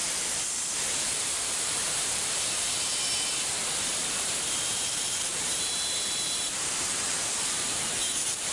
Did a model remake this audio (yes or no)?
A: yes